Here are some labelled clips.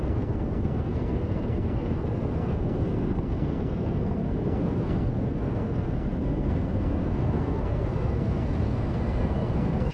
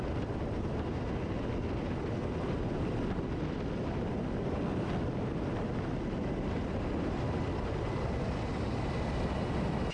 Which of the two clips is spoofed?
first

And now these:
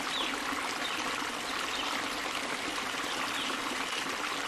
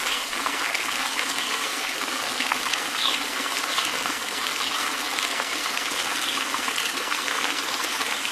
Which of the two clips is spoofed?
second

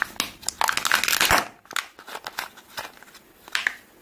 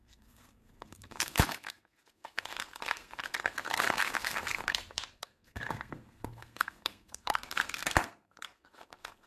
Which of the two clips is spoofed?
second